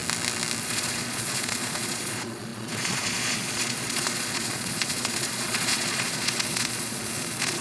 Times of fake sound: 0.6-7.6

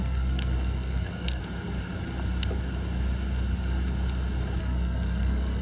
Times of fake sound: 0.0-1.4; 4.6-5.6

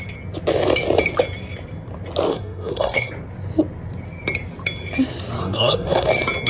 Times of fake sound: 2.3-3.1; 5.4-6.1